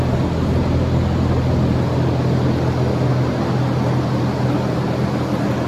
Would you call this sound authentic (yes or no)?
yes